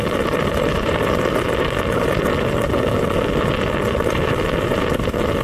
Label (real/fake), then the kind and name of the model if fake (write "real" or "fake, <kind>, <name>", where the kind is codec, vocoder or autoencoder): real